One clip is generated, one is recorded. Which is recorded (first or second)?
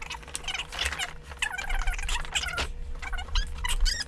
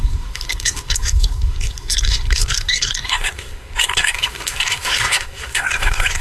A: first